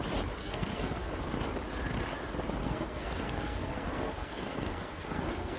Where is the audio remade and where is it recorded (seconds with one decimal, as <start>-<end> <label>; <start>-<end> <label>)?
0.0-0.4 recorded; 0.4-1.1 remade; 1.1-2.6 recorded; 2.6-5.6 remade